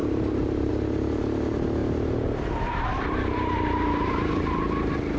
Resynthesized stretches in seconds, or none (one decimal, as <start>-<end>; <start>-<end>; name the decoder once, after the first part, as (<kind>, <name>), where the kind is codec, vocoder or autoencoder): 0.0-0.7 (vocoder, BigVGAN v2); 1.8-4.3